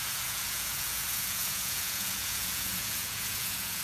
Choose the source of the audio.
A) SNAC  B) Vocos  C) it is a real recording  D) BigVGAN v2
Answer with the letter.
B